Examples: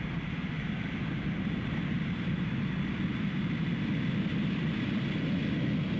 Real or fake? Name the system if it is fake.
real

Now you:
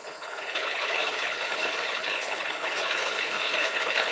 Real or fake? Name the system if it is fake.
fake, codec, HILCodec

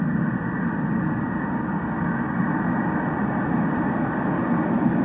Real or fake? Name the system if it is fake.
real